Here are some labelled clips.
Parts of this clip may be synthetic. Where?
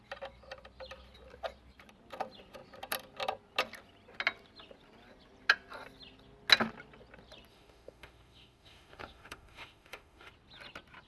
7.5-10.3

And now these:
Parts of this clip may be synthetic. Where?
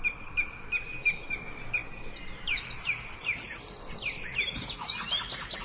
none